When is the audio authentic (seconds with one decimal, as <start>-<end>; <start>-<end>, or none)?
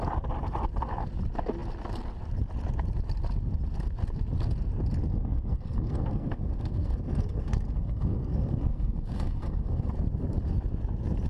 0.0-5.1; 9.9-11.3